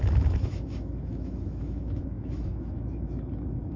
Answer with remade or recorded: remade